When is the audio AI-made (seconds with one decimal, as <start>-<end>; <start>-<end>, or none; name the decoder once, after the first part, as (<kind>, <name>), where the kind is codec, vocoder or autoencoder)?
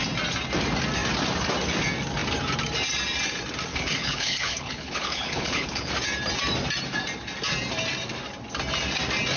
3.7-5.9 (codec, HILCodec)